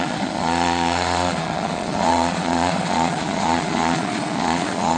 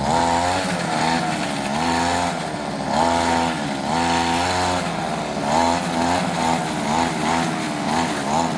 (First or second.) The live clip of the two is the second